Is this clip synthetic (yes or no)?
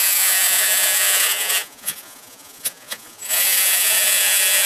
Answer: yes